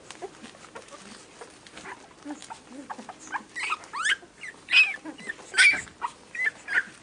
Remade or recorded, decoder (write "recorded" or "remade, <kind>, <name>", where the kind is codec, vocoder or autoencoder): recorded